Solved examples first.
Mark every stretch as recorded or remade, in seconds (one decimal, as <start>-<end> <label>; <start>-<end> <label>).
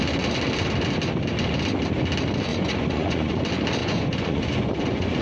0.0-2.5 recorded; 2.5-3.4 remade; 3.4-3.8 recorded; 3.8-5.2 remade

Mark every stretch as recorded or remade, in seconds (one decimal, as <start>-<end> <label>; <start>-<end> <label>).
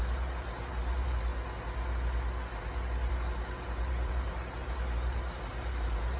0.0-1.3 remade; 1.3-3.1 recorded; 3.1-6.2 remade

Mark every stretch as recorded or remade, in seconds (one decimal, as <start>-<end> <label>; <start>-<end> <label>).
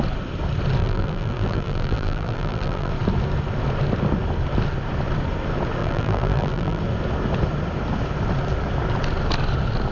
0.0-0.8 recorded; 0.8-2.9 remade; 2.9-5.8 recorded; 5.8-6.8 remade; 6.8-9.9 recorded